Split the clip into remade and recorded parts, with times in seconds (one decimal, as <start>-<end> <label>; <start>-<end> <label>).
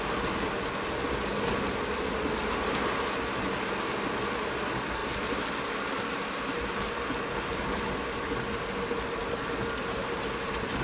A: 0.0-10.8 recorded